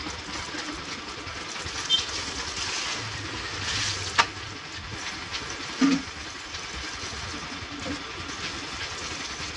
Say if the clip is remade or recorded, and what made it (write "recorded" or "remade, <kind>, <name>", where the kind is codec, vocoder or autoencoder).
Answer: recorded